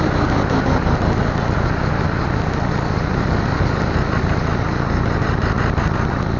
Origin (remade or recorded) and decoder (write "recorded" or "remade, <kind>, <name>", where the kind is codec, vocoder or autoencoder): recorded